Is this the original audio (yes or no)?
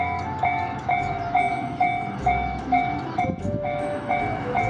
no